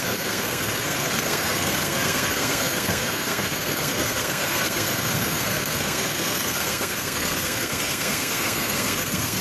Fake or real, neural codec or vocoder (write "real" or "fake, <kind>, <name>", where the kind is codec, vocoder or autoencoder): fake, codec, SNAC